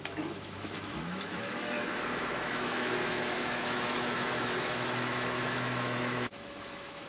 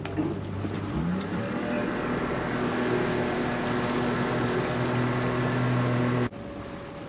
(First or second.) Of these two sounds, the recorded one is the second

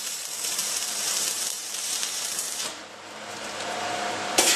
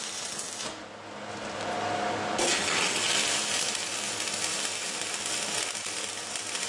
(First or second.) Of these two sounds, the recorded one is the second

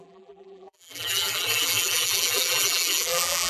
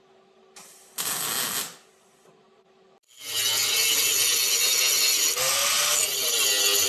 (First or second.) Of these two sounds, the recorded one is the second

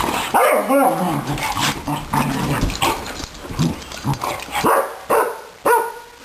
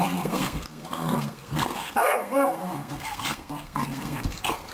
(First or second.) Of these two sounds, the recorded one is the first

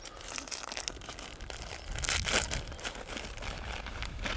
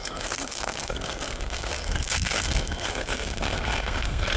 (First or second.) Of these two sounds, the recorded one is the first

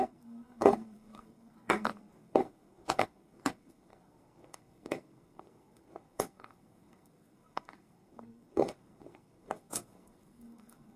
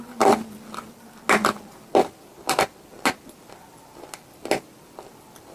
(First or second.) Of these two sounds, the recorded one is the second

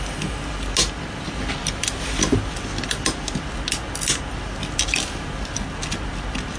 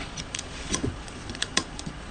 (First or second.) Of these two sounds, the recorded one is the first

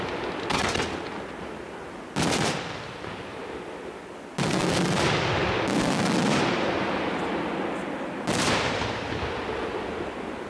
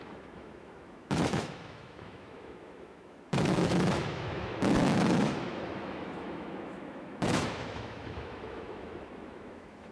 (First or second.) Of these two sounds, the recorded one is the first